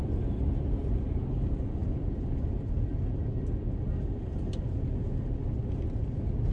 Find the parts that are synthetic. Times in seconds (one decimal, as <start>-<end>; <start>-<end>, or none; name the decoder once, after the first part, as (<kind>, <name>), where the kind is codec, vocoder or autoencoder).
none